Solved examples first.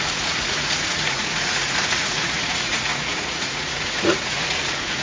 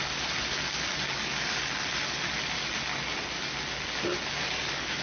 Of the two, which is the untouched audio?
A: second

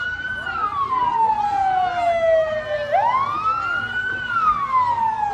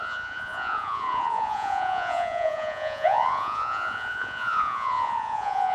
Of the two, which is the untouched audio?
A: first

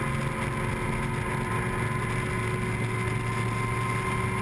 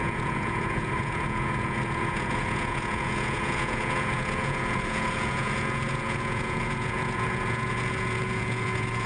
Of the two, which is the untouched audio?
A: first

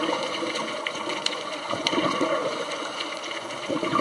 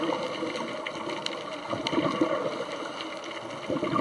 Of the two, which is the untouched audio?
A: second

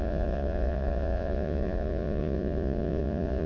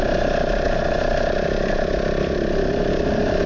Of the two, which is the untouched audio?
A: second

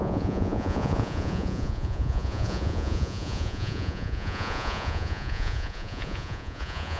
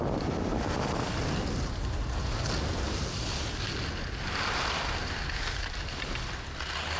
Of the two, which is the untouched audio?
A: second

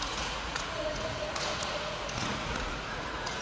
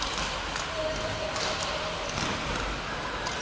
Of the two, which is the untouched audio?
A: second